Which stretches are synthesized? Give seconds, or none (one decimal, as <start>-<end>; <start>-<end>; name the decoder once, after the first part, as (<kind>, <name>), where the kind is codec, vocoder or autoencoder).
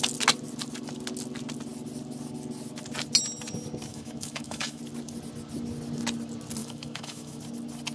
3.9-4.8 (autoencoder, DAC-VAE); 6.6-7.4